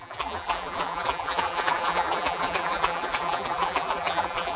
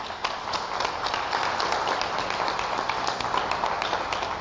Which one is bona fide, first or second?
second